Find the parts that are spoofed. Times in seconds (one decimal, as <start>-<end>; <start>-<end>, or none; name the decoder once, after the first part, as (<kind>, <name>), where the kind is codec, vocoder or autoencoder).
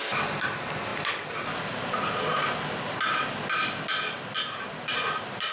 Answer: none